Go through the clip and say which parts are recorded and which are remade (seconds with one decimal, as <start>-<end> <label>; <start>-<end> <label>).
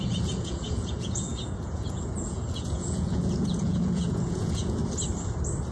0.0-4.8 remade; 4.8-5.7 recorded